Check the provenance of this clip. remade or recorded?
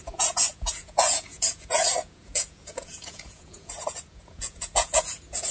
remade